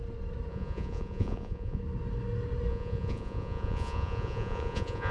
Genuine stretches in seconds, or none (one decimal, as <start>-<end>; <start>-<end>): 0.0-0.5; 1.8-2.7